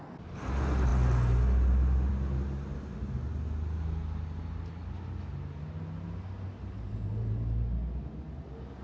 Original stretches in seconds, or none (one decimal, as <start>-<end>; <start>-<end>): 0.0-8.8